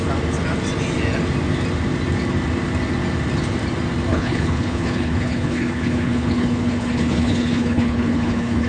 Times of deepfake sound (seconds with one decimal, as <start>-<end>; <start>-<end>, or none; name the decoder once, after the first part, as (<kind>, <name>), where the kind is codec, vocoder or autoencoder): 4.1-8.7 (codec, HILCodec)